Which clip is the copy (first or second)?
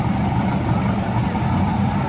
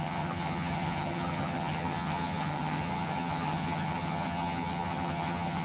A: second